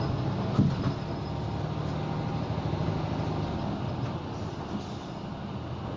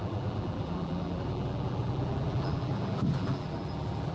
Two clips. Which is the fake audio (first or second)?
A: second